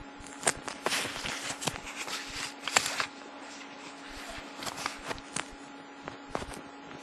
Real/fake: fake